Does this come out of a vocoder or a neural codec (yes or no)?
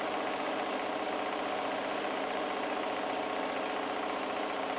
no